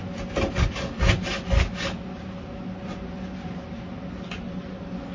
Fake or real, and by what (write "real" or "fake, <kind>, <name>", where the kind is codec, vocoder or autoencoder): real